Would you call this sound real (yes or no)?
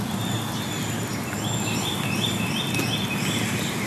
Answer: yes